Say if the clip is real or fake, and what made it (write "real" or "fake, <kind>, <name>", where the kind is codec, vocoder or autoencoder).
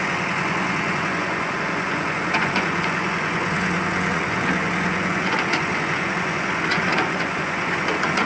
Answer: fake, vocoder, Vocos